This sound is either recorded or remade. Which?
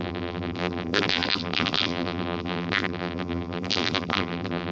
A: remade